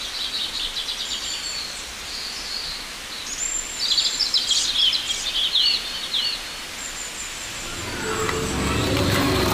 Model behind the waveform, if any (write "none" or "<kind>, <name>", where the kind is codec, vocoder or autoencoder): none